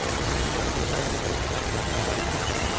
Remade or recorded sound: remade